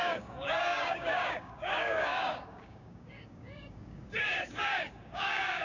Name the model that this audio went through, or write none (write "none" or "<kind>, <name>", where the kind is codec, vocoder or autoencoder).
codec, DAC